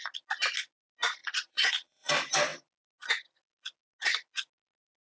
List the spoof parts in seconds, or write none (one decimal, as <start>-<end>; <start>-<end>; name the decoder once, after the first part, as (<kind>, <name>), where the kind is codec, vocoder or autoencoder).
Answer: 1.2-2.1 (vocoder, Vocos)